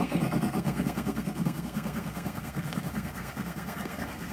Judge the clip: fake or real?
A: fake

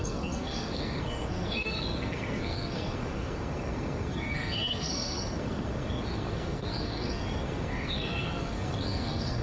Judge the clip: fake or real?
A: fake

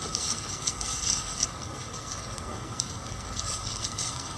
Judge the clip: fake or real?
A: fake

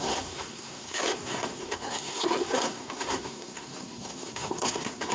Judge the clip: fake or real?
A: fake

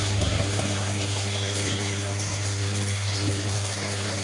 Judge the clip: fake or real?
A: fake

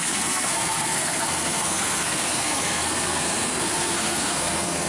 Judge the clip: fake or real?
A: fake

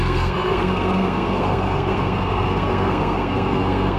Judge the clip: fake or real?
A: fake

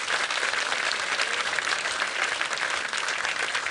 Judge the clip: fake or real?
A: real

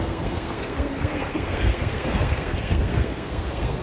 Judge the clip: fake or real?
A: fake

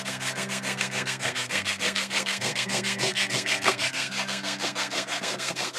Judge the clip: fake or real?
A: fake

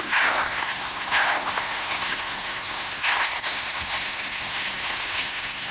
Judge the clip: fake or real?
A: fake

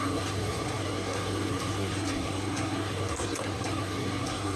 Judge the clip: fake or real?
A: fake